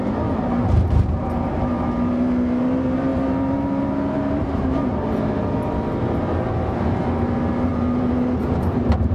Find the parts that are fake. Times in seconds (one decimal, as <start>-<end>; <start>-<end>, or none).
0.0-9.1